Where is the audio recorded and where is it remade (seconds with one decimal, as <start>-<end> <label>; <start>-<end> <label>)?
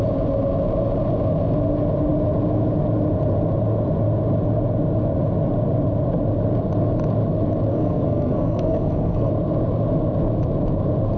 0.0-7.7 recorded; 7.7-9.3 remade; 9.3-11.2 recorded